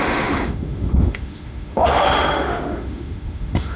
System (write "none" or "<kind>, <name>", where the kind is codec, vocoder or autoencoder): autoencoder, DAC-VAE